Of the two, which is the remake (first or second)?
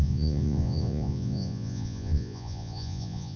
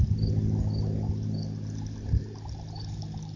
first